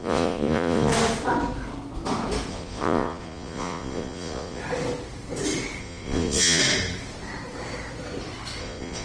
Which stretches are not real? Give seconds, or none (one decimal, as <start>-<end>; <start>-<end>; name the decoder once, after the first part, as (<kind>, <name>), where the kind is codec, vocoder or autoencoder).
0.0-0.9 (vocoder, Vocos); 2.5-4.6; 5.8-6.6; 8.6-9.0